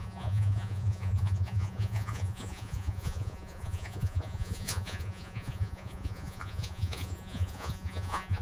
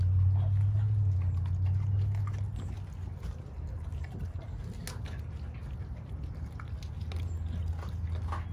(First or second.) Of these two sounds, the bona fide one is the second